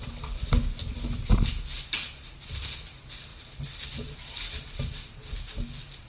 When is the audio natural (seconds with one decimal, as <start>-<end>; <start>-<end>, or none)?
0.0-6.1

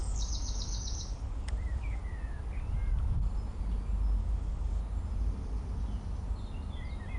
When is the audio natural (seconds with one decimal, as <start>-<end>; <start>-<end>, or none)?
2.0-4.2; 4.8-7.2